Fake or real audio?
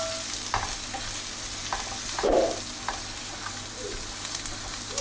real